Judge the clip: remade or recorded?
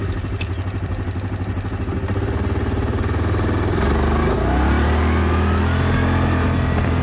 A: recorded